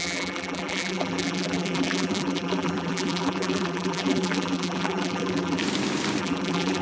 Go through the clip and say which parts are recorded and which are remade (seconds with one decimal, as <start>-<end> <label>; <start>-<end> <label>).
0.0-5.6 remade; 5.6-6.2 recorded; 6.2-6.8 remade